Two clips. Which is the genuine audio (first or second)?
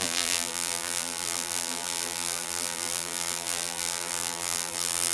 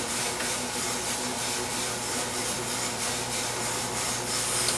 second